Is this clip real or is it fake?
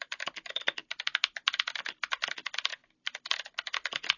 real